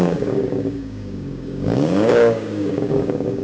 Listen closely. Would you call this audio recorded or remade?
remade